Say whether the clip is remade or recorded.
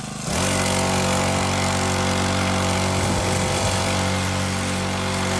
recorded